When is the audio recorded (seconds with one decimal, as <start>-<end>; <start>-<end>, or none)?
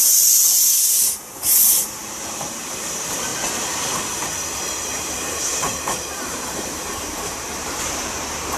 3.3-5.0